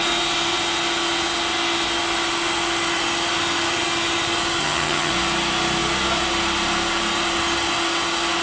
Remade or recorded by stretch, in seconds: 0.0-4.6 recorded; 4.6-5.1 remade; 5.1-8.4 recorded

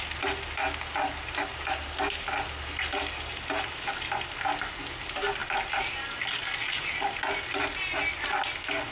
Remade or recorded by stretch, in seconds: 0.0-8.9 recorded

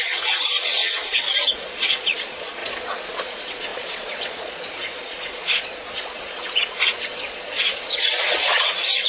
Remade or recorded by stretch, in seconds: 0.0-9.1 remade

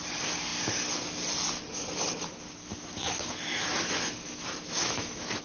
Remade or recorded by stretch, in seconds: 0.0-2.6 recorded; 2.6-5.4 remade

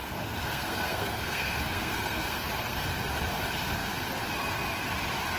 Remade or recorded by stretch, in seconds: 0.0-2.9 remade; 2.9-5.4 recorded

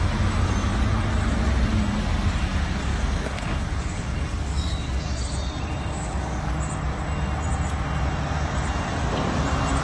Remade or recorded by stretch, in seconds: 0.0-2.9 recorded; 2.9-5.2 remade; 5.2-5.8 recorded; 5.8-6.5 remade; 6.5-9.8 recorded

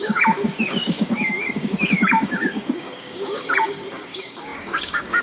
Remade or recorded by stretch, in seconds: 0.0-5.2 remade